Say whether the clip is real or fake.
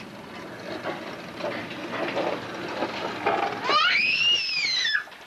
real